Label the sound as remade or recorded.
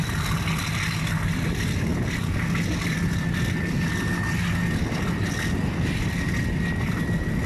recorded